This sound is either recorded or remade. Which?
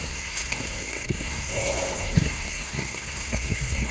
remade